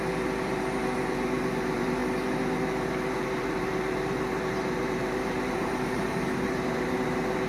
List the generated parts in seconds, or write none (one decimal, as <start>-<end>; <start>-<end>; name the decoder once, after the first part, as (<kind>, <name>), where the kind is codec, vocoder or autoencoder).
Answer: 0.0-7.5 (vocoder, BigVGAN v2)